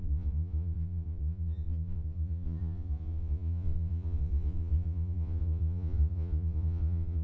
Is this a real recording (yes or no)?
no